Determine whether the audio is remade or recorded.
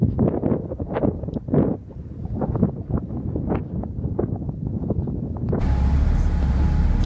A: recorded